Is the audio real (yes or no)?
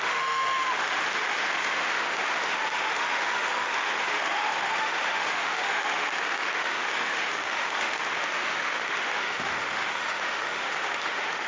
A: no